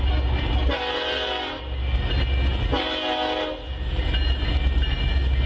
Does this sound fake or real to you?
real